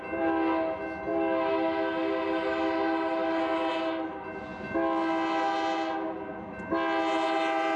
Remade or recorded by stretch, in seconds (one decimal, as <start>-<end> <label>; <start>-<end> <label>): 0.0-7.8 recorded